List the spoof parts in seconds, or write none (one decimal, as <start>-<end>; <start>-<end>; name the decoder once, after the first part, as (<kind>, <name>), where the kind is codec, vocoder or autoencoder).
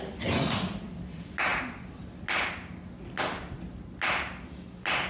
none